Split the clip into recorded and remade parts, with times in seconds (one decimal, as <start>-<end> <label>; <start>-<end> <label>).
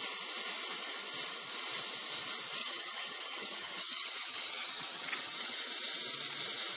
0.0-2.6 recorded; 2.6-5.7 remade; 5.7-6.8 recorded